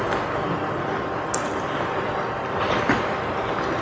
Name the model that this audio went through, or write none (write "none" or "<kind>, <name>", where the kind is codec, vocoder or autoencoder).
none